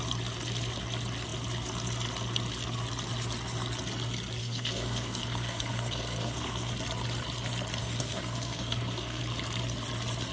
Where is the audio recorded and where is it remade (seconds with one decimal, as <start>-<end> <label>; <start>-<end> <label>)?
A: 0.0-4.4 recorded; 4.4-6.7 remade; 6.7-7.8 recorded; 7.8-9.2 remade; 9.2-10.3 recorded